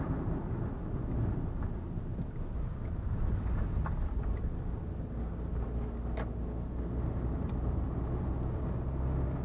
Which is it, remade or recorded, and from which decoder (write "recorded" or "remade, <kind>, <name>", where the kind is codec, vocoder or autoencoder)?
recorded